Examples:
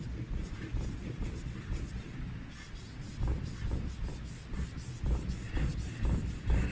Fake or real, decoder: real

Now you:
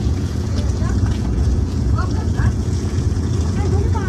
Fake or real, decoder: fake, vocoder, Vocos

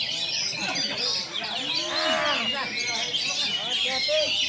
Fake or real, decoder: real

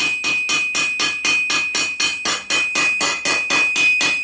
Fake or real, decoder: real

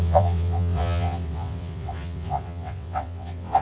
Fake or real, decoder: fake, vocoder, WaveNeXt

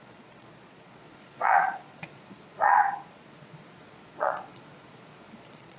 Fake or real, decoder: fake, vocoder, Vocos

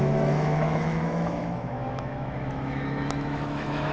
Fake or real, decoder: fake, autoencoder, DAC-VAE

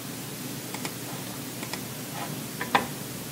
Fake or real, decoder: real